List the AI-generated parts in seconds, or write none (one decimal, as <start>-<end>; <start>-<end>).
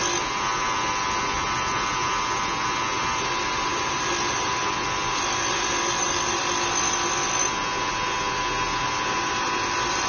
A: 3.7-6.4